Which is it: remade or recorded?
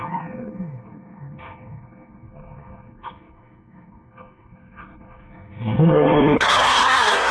remade